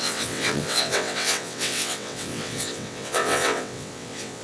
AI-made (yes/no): yes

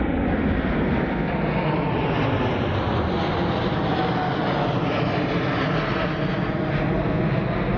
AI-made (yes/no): no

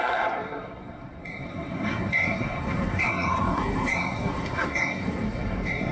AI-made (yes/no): yes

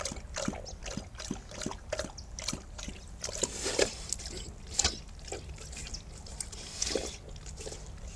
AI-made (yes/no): no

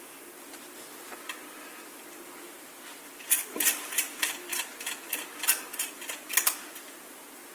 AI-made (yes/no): no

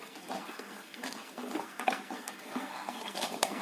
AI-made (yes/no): yes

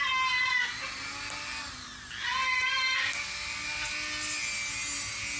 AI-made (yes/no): no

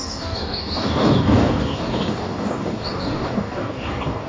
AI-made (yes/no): yes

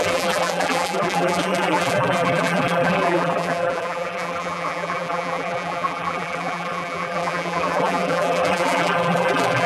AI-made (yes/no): yes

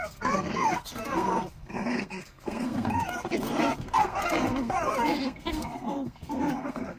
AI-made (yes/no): yes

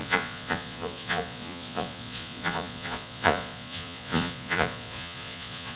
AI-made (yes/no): yes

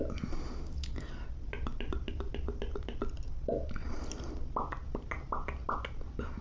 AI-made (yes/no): no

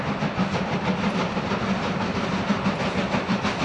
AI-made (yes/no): no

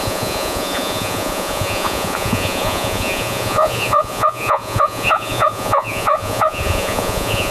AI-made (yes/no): yes